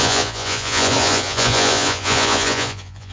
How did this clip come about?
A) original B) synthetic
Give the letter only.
B